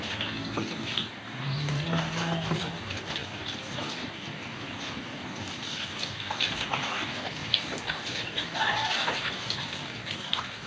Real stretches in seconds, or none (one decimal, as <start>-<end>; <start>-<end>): none